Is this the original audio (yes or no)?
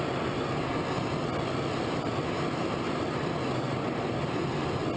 yes